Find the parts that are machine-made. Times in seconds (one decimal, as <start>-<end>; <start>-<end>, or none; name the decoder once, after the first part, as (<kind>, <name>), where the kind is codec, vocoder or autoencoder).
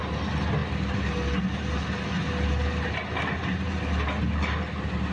none